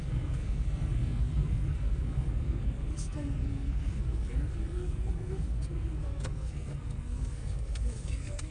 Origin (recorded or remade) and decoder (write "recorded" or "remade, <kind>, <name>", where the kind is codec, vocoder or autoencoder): remade, codec, SNAC